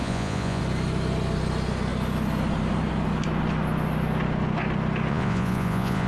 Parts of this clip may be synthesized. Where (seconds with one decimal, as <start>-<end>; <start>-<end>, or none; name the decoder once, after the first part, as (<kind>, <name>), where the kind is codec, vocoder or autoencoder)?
0.0-0.6 (vocoder, Vocos); 5.1-6.1